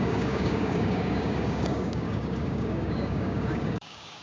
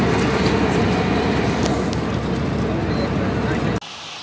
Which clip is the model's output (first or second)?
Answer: first